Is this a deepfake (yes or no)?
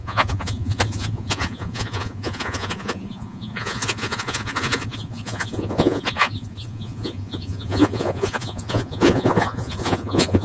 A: yes